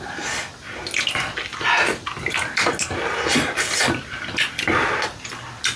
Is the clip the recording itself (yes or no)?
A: yes